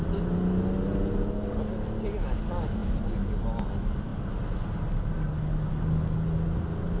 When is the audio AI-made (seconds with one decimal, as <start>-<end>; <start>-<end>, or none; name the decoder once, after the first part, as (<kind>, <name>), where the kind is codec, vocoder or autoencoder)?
none